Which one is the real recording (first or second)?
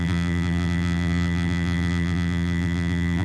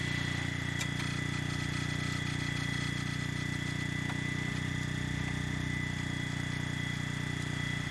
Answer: second